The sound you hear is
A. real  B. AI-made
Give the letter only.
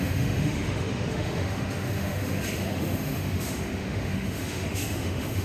B